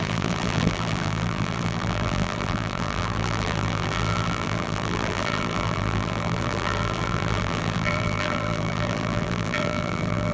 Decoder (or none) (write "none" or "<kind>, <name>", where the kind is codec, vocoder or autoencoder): vocoder, BigVGAN v2